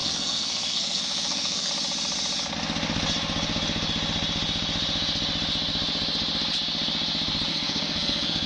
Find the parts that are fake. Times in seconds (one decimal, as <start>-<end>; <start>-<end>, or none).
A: 0.0-1.7; 7.5-8.5